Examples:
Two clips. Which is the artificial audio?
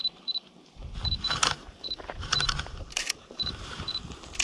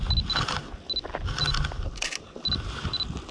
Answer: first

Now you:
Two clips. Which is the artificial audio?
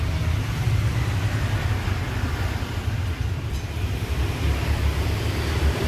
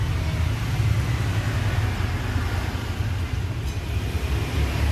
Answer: first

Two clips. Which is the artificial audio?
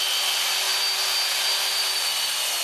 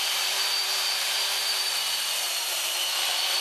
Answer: second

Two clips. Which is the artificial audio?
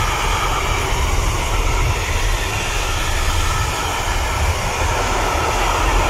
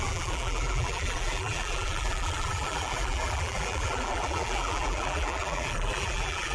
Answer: second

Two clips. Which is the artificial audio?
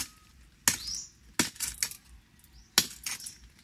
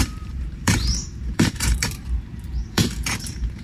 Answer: second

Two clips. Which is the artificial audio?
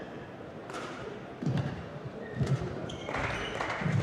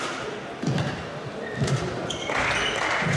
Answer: first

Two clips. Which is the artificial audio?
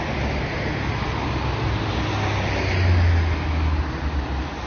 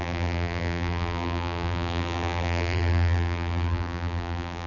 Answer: second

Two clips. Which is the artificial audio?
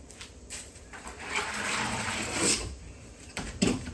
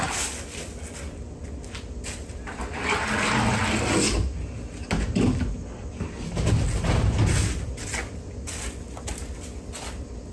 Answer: first